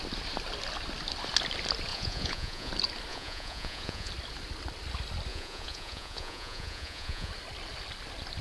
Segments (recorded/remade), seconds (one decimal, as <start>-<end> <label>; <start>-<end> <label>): 0.0-1.9 recorded; 1.9-2.7 remade; 2.7-3.1 recorded; 3.1-4.1 remade; 4.1-5.3 recorded; 5.3-7.3 remade; 7.3-8.4 recorded

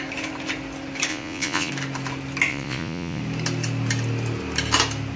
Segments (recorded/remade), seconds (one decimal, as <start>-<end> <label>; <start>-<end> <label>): 0.0-1.1 recorded; 1.1-1.7 remade; 1.7-2.5 recorded; 2.5-3.2 remade; 3.2-5.2 recorded

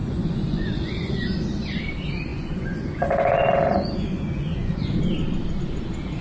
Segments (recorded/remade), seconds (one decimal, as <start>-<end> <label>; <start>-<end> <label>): 0.0-1.1 remade; 1.1-2.3 recorded; 2.3-5.0 remade; 5.0-6.2 recorded

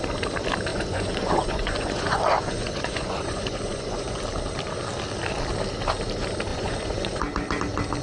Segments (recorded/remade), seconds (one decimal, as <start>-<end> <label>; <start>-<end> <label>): 0.0-0.7 recorded; 0.7-4.2 remade; 4.2-6.5 recorded; 6.5-7.2 remade; 7.2-8.0 recorded

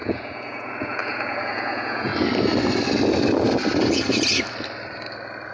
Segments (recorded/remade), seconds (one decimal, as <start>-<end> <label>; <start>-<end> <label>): 0.0-2.1 remade; 2.1-5.5 recorded

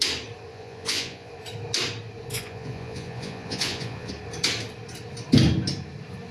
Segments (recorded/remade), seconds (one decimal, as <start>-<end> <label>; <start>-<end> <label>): 0.0-0.5 recorded; 0.5-1.3 remade; 1.3-2.3 recorded; 2.3-4.1 remade; 4.1-6.3 recorded

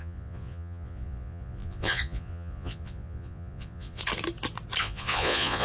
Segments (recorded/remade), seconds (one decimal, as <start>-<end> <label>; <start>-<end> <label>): 0.0-4.0 remade; 4.0-4.8 recorded; 4.8-5.6 remade